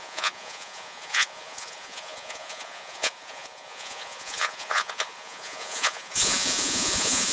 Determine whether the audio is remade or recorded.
remade